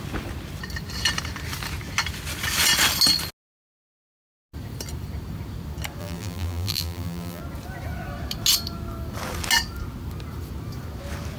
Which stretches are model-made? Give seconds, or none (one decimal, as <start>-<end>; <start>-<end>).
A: 6.0-7.4